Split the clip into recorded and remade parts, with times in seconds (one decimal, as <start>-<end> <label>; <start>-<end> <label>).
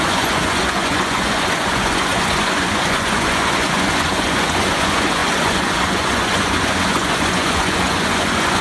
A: 0.0-8.6 remade